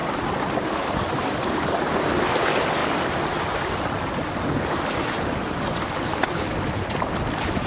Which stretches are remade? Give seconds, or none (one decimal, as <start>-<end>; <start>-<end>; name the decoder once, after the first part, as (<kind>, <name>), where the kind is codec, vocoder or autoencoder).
none